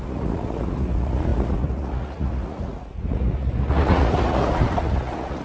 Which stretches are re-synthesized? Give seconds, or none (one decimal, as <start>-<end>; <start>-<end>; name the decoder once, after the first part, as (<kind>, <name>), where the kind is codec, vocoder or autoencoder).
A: 0.0-5.4 (vocoder, Vocos)